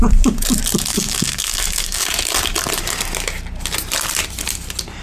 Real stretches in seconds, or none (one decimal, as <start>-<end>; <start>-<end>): 0.0-0.9; 2.1-5.0